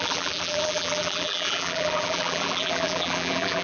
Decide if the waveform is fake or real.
fake